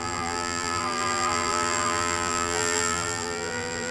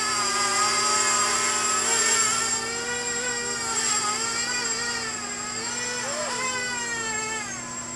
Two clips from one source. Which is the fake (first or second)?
first